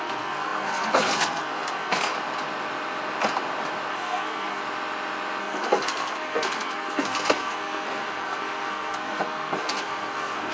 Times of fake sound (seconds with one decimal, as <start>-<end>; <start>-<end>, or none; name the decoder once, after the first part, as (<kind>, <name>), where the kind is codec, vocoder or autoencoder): 0.0-2.1 (codec, SNAC); 3.9-4.6; 5.4-10.5